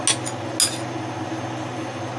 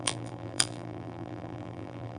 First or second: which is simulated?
second